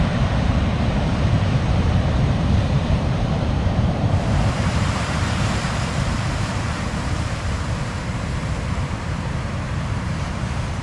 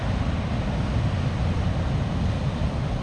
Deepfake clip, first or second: first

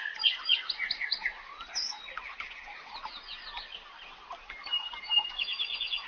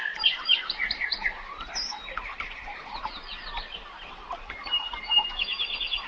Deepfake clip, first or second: second